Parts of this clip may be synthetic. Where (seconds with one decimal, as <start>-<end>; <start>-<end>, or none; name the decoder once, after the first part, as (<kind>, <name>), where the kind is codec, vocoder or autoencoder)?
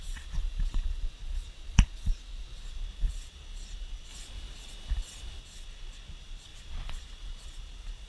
0.0-4.1 (vocoder, Vocos); 5.4-8.1